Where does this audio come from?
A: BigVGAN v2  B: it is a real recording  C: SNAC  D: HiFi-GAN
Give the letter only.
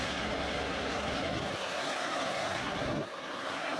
C